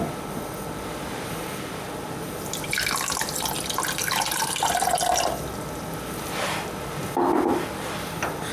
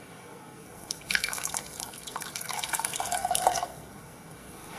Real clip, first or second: first